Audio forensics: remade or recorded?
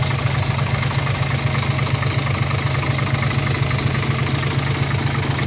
recorded